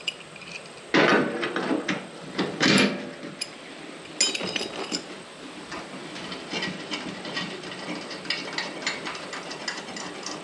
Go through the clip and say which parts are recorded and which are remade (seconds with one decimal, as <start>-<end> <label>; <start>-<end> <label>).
0.0-1.1 recorded; 1.1-3.7 remade; 3.7-10.4 recorded